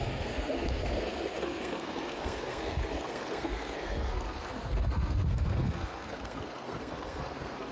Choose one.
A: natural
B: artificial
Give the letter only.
B